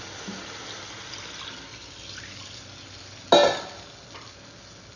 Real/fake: real